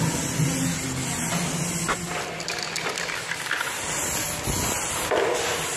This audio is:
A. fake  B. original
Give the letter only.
B